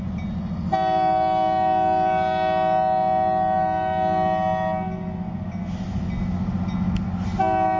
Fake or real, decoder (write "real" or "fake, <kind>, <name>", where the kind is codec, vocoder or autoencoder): real